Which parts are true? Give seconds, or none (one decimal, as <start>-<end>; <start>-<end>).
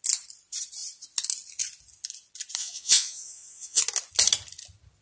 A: 0.0-2.6; 3.8-5.0